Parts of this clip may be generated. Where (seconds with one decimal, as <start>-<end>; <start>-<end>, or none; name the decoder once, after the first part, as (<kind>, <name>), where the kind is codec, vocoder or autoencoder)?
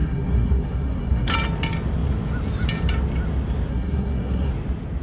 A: 0.0-1.3 (codec, SNAC); 3.7-4.5